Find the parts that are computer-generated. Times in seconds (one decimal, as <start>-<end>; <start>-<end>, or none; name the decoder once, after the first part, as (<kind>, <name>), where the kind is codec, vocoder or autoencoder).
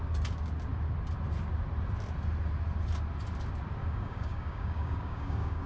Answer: 3.8-5.7 (codec, DAC)